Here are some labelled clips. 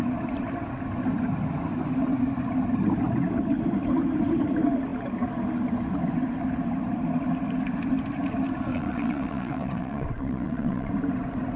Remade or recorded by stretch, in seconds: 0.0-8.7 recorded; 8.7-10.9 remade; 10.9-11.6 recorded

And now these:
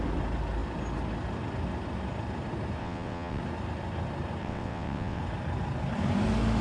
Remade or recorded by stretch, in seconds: 0.0-2.8 recorded; 2.8-3.4 remade; 3.4-4.4 recorded; 4.4-5.2 remade; 5.2-6.6 recorded

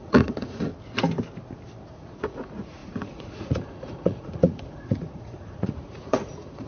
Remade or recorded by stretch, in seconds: 0.0-0.7 remade; 0.7-1.9 recorded; 1.9-6.7 remade

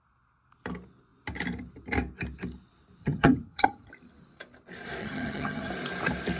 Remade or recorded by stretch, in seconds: 0.0-3.0 recorded; 3.0-3.9 remade; 3.9-5.0 recorded; 5.0-5.7 remade; 5.7-6.4 recorded

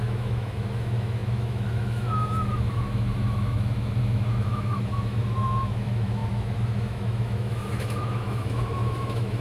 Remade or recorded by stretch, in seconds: 0.0-9.4 remade

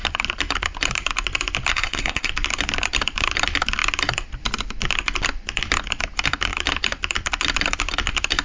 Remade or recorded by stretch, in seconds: 0.0-1.7 recorded; 1.7-2.3 remade; 2.3-8.4 recorded

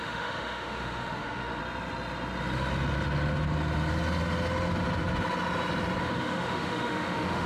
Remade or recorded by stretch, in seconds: 0.0-1.6 remade; 1.6-6.0 recorded; 6.0-7.5 remade